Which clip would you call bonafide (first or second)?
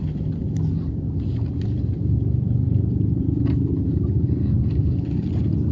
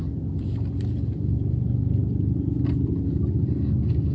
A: second